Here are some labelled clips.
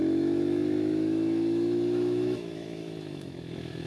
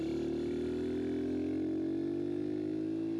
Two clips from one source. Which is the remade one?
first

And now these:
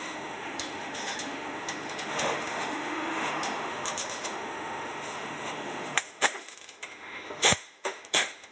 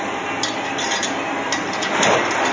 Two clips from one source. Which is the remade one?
first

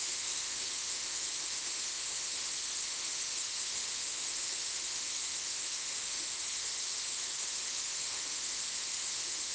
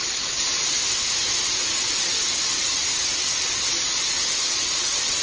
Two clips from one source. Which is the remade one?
first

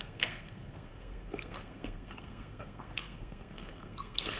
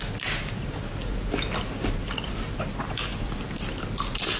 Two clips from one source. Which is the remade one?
first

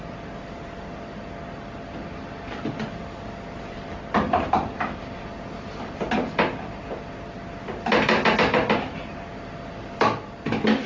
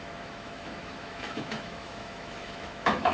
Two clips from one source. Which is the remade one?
second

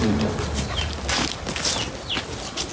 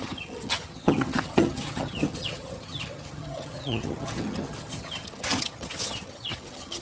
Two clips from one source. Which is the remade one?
second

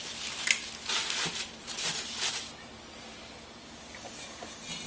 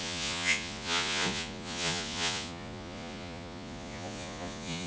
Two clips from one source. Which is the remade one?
second